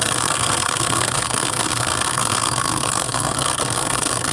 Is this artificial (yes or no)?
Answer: yes